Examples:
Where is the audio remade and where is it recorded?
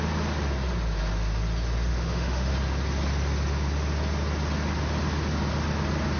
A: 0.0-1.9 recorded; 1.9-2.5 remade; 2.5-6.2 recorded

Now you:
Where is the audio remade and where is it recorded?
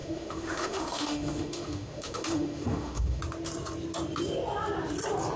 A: 0.0-3.2 remade; 3.2-5.4 recorded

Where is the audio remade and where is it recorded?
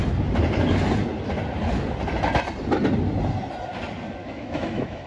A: 0.0-4.2 recorded; 4.2-5.1 remade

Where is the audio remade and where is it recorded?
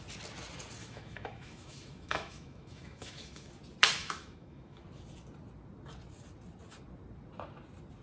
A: 0.0-0.8 recorded; 0.8-3.5 remade; 3.5-4.0 recorded; 4.0-4.8 remade; 4.8-8.0 recorded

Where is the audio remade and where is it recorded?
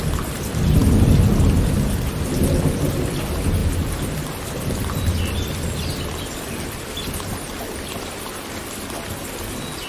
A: 0.0-9.9 recorded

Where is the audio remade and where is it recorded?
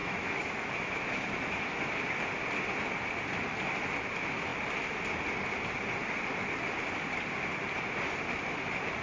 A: 0.0-1.9 remade; 1.9-9.0 recorded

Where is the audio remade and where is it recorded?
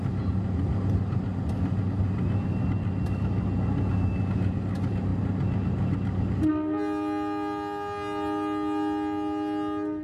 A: 0.0-10.0 recorded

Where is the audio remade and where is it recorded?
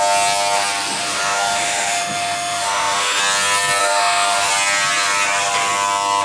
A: 0.0-0.9 recorded; 0.9-3.2 remade; 3.2-3.8 recorded; 3.8-4.5 remade; 4.5-6.2 recorded